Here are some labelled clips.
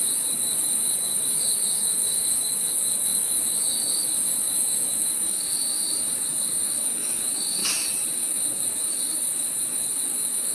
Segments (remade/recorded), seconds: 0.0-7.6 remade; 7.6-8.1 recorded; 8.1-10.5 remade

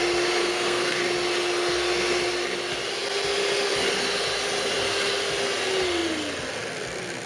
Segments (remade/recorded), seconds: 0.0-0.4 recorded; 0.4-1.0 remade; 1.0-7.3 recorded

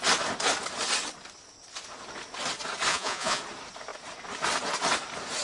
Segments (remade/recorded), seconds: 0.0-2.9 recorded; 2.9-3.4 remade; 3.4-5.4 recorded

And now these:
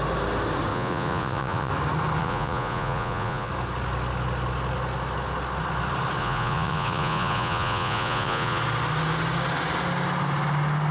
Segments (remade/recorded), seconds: 0.0-0.7 recorded; 0.7-1.7 remade; 1.7-2.2 recorded; 2.2-3.5 remade; 3.5-6.2 recorded; 6.2-8.6 remade; 8.6-10.9 recorded

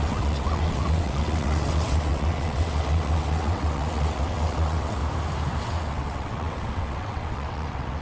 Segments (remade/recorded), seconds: 0.0-5.0 remade; 5.0-5.6 recorded; 5.6-8.0 remade

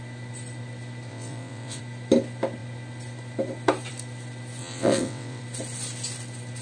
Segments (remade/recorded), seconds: 0.0-1.1 recorded; 1.1-1.8 remade; 1.8-4.6 recorded; 4.6-5.4 remade; 5.4-6.6 recorded

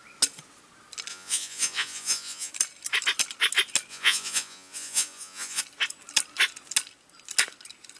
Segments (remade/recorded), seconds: 0.0-1.1 recorded; 1.1-2.5 remade; 2.5-3.9 recorded; 3.9-5.6 remade; 5.6-8.0 recorded

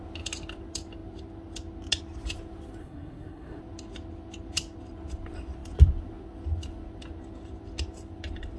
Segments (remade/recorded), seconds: 0.0-2.8 recorded; 2.8-3.6 remade; 3.6-8.6 recorded